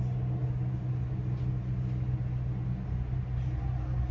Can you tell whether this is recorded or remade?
recorded